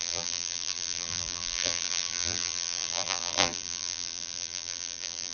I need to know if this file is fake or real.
fake